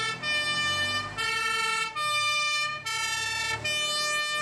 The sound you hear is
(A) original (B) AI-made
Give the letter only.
A